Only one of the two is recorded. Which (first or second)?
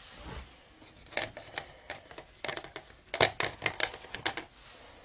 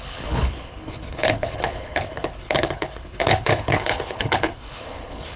first